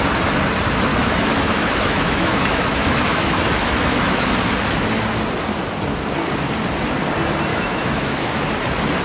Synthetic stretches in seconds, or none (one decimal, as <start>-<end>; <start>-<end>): 0.9-4.3; 7.5-8.4